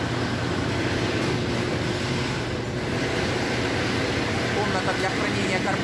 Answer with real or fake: real